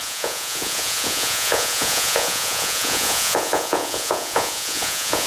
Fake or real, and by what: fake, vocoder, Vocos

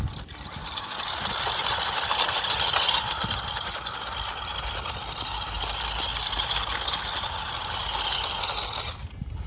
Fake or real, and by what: real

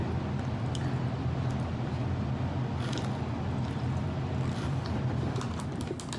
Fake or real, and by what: real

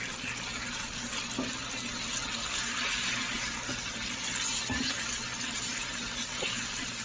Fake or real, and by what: real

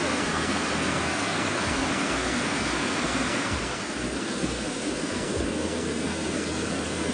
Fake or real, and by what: fake, codec, SNAC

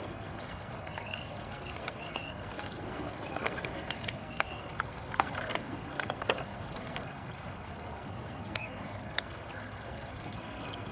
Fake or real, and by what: fake, codec, SNAC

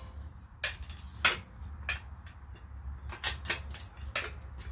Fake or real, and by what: real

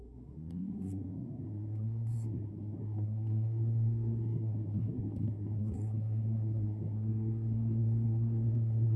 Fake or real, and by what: fake, codec, SNAC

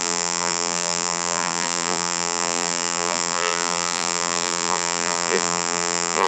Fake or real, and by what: fake, vocoder, BigVGAN v2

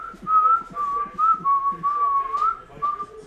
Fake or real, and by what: real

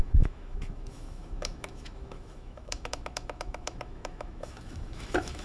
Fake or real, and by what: fake, autoencoder, DAC-VAE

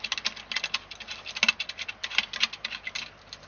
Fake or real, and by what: real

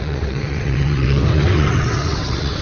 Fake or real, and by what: fake, vocoder, WaveNeXt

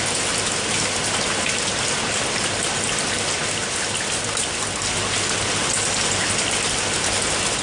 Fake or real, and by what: real